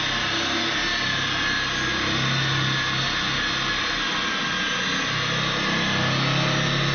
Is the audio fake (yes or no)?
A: no